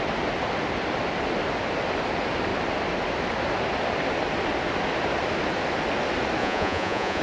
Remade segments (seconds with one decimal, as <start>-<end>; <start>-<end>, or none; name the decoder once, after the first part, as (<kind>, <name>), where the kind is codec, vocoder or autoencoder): 6.4-7.2 (vocoder, Vocos)